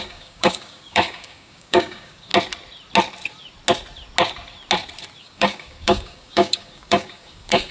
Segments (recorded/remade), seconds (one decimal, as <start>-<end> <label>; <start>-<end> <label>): 0.0-2.3 remade; 2.3-5.2 recorded; 5.2-7.7 remade